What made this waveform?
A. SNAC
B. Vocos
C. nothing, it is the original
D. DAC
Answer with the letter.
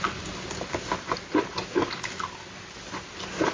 C